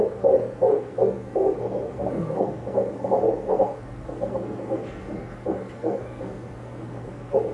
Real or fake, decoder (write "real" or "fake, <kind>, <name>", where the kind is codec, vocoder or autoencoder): fake, codec, SNAC